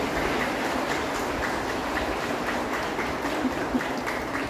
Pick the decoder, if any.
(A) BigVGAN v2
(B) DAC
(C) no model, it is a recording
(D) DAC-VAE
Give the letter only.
C